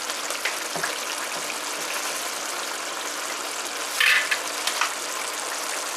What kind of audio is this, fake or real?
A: real